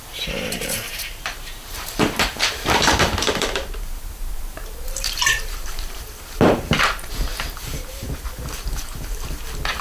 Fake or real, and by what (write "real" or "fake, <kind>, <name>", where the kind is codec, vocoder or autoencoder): fake, vocoder, BigVGAN v2